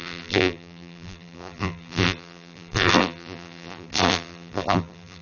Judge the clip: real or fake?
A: fake